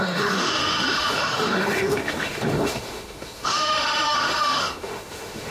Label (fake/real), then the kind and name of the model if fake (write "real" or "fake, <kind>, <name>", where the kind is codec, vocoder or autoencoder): fake, autoencoder, DAC-VAE